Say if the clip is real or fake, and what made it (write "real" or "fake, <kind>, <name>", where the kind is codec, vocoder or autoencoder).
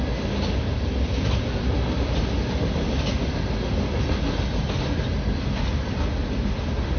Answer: real